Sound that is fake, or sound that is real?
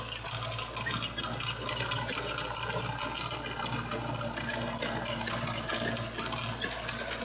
real